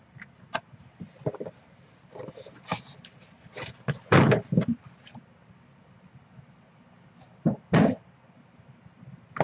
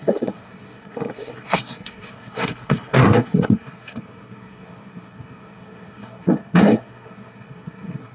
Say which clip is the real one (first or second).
first